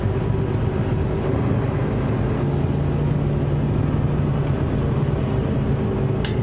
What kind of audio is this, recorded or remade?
recorded